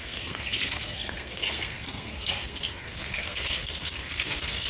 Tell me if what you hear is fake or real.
fake